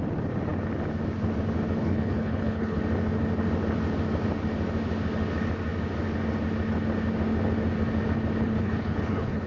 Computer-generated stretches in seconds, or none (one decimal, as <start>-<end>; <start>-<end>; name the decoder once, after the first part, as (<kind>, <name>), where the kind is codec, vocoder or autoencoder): 1.8-2.8 (codec, HILCodec); 8.4-9.5